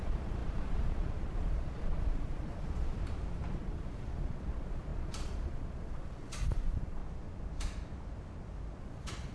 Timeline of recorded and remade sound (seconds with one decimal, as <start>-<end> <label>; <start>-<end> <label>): 0.0-3.0 remade; 3.0-3.5 recorded; 3.5-7.0 remade; 7.0-8.8 recorded; 8.8-9.3 remade